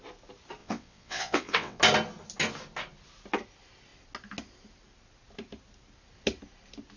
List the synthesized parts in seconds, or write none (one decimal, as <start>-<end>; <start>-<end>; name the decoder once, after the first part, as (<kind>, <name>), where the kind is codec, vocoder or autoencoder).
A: 0.6-1.8 (vocoder, WaveNeXt)